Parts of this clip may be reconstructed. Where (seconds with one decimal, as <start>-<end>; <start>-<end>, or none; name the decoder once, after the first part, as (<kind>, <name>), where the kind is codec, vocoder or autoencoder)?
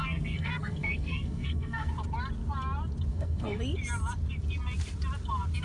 0.0-1.9 (codec, SNAC); 3.1-3.6